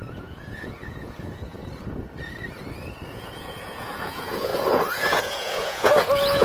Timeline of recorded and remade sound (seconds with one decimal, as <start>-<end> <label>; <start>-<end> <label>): 0.0-1.6 remade; 1.6-3.1 recorded; 3.1-6.4 remade